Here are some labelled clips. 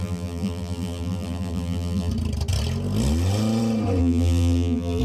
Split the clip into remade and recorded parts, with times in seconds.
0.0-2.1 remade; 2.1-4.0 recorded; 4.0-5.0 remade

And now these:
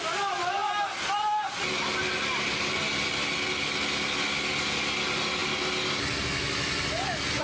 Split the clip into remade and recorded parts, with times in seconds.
0.0-7.4 recorded

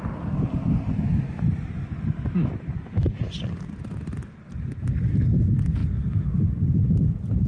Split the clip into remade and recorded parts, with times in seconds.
0.0-7.5 recorded

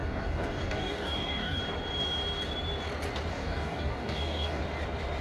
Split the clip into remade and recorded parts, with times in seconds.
0.0-1.6 remade; 1.6-3.3 recorded; 3.3-4.6 remade; 4.6-5.2 recorded